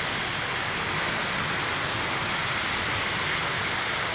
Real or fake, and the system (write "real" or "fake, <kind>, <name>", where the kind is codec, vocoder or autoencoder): real